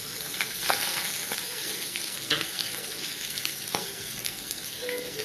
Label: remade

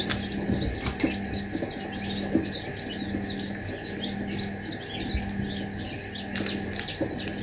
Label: recorded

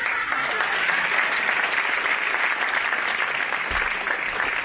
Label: recorded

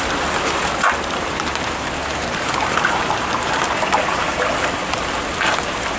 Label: recorded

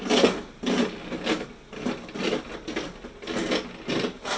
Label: recorded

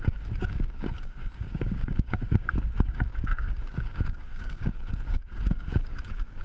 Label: remade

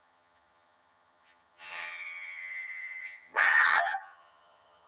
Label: remade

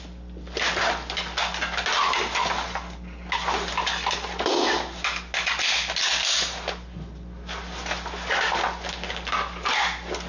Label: recorded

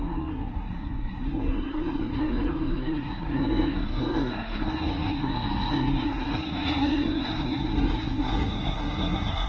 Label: remade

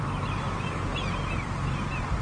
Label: recorded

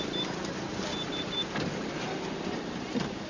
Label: recorded